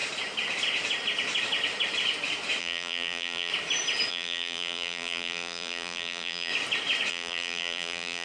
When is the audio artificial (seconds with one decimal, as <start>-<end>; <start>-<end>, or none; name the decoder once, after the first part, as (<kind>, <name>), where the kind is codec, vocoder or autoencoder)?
2.6-3.5 (vocoder, BigVGAN v2); 4.1-6.5; 7.1-8.2